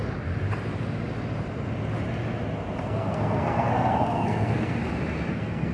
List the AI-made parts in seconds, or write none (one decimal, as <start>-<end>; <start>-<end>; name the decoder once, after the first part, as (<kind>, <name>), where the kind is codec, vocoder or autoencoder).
2.8-4.8 (codec, SNAC); 5.3-5.7